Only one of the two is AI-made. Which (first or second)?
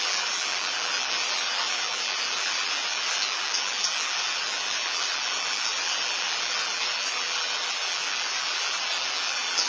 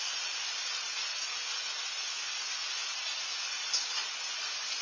first